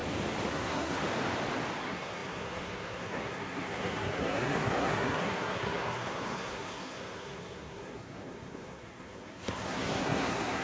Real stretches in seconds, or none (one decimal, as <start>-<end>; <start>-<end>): 0.0-0.5; 1.0-1.8